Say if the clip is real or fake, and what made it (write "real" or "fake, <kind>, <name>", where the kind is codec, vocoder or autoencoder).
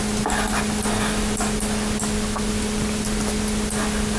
real